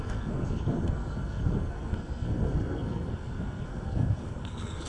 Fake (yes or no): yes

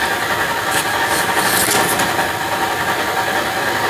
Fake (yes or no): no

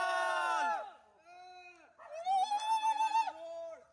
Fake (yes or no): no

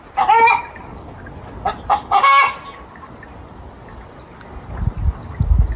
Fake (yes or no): no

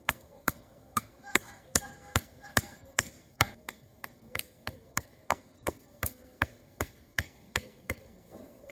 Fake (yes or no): yes